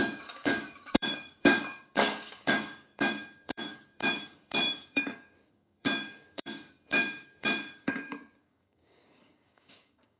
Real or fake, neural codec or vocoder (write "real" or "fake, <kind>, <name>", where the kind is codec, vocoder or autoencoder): fake, codec, DAC